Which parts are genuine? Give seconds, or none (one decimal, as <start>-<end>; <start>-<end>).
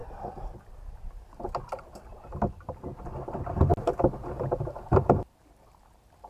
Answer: 1.1-6.3